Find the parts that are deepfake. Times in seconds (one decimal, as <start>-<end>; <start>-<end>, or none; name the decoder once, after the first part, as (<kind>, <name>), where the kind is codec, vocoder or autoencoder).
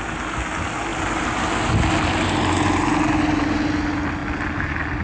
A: 0.9-1.4 (vocoder, BigVGAN v2)